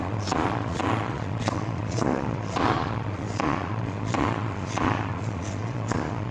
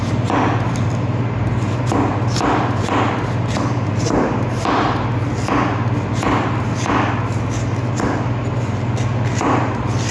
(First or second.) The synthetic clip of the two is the first